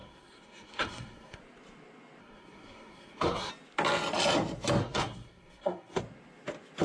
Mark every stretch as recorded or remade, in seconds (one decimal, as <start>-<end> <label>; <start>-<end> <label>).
0.0-1.4 remade; 1.4-2.2 recorded; 2.2-3.5 remade; 3.5-4.8 recorded; 4.8-6.0 remade; 6.0-6.8 recorded